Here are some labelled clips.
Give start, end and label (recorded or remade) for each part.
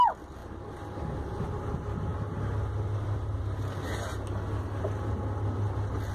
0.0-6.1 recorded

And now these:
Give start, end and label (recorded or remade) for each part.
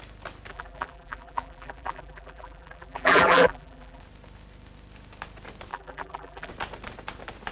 0.0-0.5 recorded; 0.5-4.0 remade; 4.0-5.7 recorded; 5.7-6.5 remade; 6.5-7.5 recorded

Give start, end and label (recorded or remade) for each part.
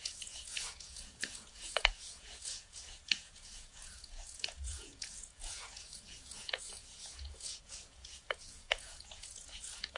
0.0-10.0 remade